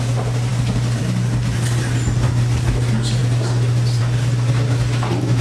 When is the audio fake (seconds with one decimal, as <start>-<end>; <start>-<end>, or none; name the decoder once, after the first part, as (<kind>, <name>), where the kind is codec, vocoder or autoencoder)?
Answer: none